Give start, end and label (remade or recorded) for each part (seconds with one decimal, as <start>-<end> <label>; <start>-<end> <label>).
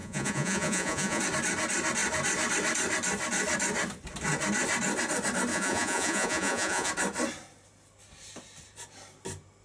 0.0-1.2 remade; 1.2-5.5 recorded; 5.5-6.9 remade; 6.9-9.6 recorded